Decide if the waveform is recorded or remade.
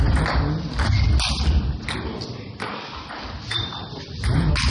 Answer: recorded